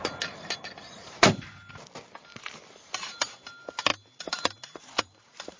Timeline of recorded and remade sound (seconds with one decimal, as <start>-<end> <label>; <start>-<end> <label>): 0.0-1.0 recorded; 1.0-1.6 remade; 1.6-2.3 recorded; 2.3-3.5 remade; 3.5-3.9 recorded; 3.9-5.6 remade